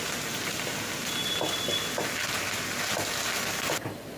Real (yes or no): yes